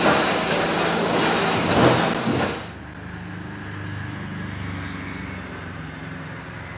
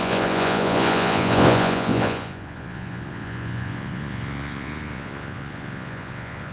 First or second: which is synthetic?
second